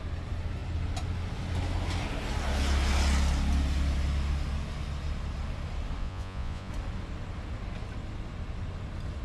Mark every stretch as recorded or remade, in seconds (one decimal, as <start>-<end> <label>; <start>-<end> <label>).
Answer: 0.0-6.0 recorded; 6.0-6.7 remade; 6.7-9.2 recorded